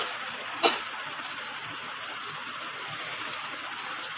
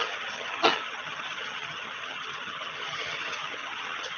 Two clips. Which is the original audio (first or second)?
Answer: first